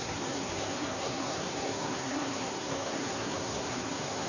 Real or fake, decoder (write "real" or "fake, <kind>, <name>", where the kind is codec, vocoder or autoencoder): fake, codec, SNAC